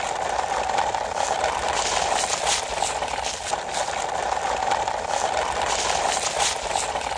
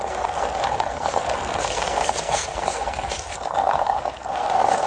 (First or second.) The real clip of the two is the first